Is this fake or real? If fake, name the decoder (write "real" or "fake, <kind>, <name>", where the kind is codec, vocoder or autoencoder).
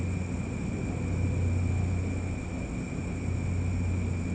real